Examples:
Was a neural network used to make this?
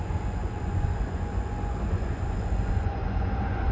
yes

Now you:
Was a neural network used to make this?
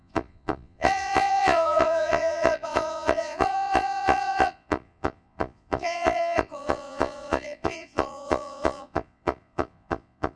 yes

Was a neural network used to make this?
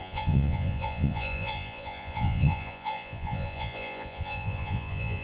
yes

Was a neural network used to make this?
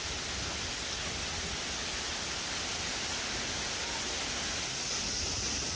no